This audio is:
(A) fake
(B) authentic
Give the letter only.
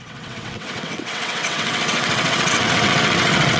A